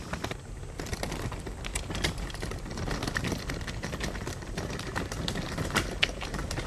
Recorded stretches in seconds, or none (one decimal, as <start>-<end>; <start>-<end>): 0.0-6.7